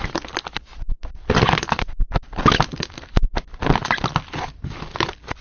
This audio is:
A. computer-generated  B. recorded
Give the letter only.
B